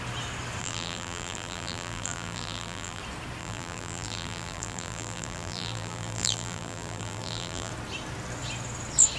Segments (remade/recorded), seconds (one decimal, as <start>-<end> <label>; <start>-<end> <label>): 0.0-0.6 recorded; 0.6-3.0 remade; 3.0-3.4 recorded; 3.4-7.7 remade; 7.7-9.2 recorded